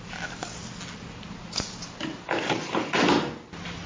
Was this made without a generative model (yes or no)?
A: yes